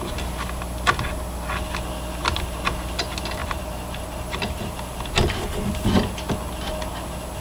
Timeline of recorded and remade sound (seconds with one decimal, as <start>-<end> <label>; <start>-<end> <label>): 0.0-3.4 recorded; 3.4-4.7 remade; 4.7-7.4 recorded